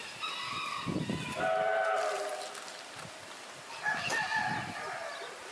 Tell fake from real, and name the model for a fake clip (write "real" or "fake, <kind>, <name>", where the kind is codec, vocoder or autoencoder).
fake, vocoder, BigVGAN v2